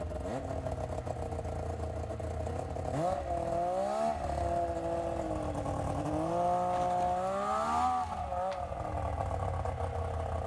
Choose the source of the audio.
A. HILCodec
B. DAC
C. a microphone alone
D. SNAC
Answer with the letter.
C